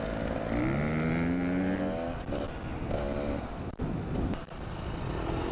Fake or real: real